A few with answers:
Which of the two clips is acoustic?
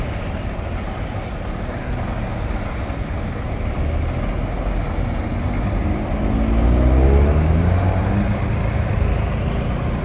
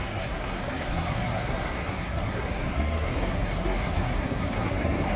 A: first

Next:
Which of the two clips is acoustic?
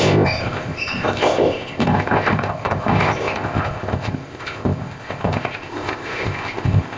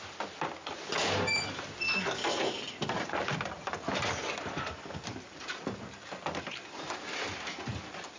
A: second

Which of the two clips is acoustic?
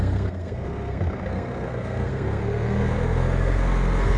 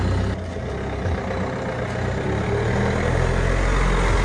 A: second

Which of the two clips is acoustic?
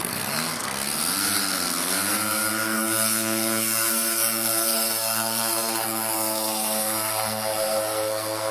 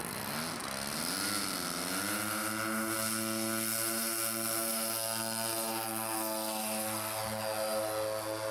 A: second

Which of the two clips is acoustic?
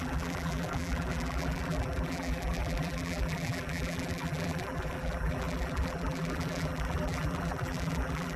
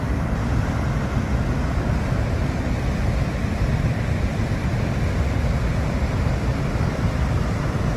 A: second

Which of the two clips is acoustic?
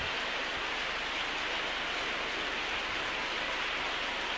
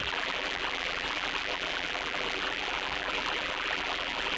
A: first